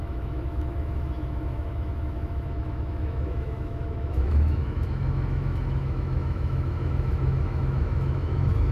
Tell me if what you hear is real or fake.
fake